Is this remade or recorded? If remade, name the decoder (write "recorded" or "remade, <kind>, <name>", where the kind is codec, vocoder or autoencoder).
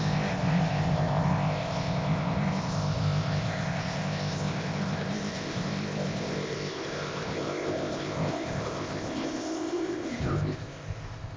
remade, codec, ZipCodec